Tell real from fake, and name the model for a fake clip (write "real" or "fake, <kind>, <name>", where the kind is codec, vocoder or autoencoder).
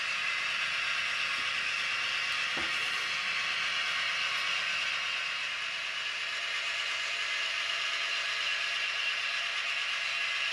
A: real